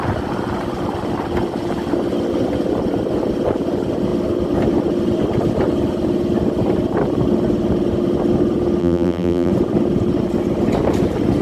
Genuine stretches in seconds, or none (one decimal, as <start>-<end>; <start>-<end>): 0.0-8.8; 9.5-11.4